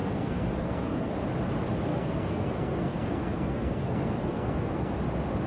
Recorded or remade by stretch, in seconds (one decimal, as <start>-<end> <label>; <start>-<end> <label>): 0.0-1.1 remade; 1.1-1.9 recorded; 1.9-4.9 remade; 4.9-5.5 recorded